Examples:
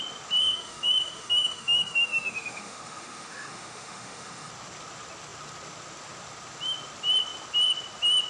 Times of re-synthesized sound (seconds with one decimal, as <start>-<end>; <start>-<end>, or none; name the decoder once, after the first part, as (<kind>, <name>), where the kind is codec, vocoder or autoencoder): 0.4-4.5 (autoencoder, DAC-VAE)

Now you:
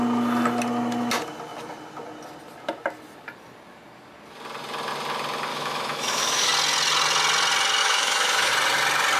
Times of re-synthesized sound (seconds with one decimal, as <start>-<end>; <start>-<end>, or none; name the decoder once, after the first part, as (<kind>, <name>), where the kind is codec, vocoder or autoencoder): 5.5-6.5 (autoencoder, DAC-VAE); 7.8-8.5

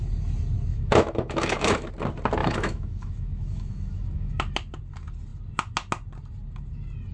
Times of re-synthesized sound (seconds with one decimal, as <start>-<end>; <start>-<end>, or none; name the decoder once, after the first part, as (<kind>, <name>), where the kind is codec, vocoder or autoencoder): 0.7-1.9 (autoencoder, DAC-VAE); 2.4-4.4

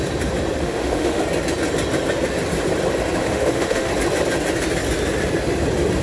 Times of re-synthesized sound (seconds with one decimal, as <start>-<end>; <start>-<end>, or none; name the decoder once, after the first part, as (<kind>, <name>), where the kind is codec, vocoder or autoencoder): 0.6-1.2 (autoencoder, DAC-VAE); 3.2-3.9

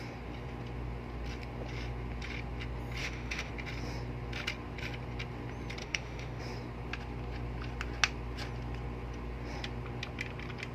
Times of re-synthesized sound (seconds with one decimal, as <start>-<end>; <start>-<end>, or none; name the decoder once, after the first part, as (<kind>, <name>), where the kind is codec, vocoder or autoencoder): 3.0-3.5 (autoencoder, DAC-VAE); 5.8-6.4

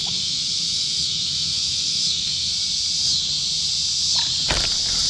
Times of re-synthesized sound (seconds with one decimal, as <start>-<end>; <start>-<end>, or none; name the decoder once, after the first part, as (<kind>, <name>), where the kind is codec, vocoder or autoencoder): 0.0-2.5 (autoencoder, DAC-VAE)

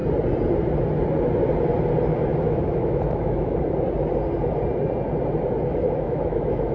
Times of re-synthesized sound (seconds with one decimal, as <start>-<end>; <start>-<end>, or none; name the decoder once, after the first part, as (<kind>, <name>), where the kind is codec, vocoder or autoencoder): 2.3-3.6 (autoencoder, DAC-VAE); 5.7-6.7

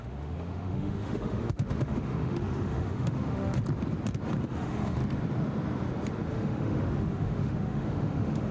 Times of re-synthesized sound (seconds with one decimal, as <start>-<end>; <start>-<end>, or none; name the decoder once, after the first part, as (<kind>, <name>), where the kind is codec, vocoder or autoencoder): 0.0-3.6 (autoencoder, DAC-VAE); 4.4-5.0; 6.3-8.5